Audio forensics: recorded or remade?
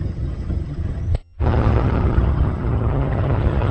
remade